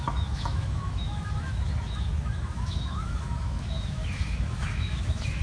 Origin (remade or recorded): remade